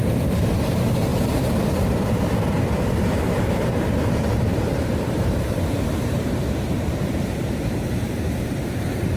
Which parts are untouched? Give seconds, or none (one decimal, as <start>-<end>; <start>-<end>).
1.1-3.0